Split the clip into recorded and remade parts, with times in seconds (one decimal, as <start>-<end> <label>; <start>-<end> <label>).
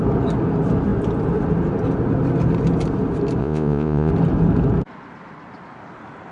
0.0-3.4 recorded; 3.4-4.1 remade; 4.1-6.3 recorded